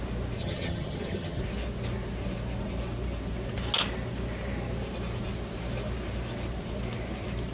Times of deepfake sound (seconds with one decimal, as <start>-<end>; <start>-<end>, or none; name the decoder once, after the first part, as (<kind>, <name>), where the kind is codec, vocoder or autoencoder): 0.4-1.4 (vocoder, HiFi-GAN)

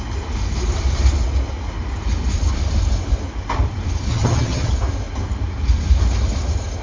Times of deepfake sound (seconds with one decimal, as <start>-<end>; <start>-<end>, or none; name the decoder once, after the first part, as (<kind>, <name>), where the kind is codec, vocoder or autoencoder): 4.1-4.7 (vocoder, HiFi-GAN)

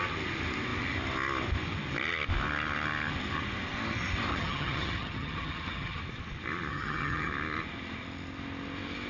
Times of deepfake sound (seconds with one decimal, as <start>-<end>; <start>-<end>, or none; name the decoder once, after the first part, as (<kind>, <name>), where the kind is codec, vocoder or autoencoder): 4.3-6.0 (vocoder, HiFi-GAN); 6.7-7.3